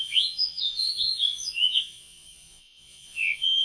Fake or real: fake